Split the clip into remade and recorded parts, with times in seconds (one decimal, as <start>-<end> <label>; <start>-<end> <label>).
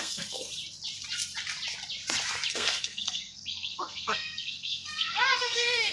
0.0-0.5 remade; 0.5-2.5 recorded; 2.5-5.9 remade